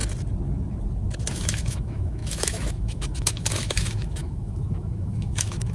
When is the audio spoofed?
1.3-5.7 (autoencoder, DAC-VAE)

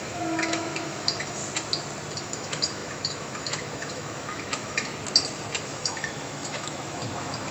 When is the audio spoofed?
0.0-1.4 (autoencoder, DAC-VAE); 2.2-4.9; 5.6-7.5

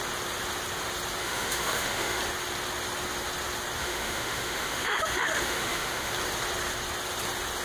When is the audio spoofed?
1.2-2.2 (autoencoder, DAC-VAE); 3.8-6.1

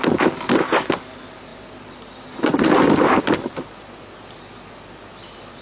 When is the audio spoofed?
none

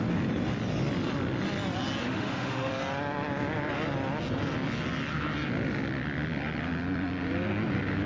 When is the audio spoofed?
2.0-2.7 (autoencoder, DAC-VAE)

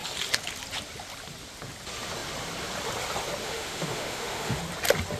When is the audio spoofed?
3.4-4.6 (autoencoder, DAC-VAE)